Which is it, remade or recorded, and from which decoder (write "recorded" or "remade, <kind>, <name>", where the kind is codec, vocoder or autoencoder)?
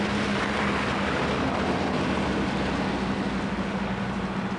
recorded